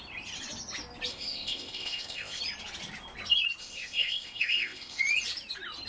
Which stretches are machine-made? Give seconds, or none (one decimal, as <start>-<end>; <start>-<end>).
1.1-2.4; 3.6-5.0